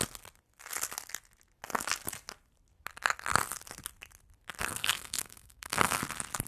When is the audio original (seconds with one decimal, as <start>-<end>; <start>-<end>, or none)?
0.0-4.6; 6.0-6.5

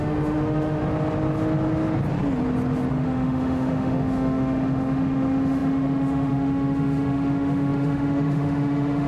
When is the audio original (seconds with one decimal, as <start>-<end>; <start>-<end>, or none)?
0.8-2.9